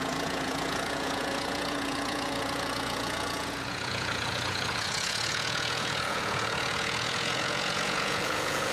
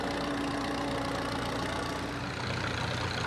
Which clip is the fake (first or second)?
first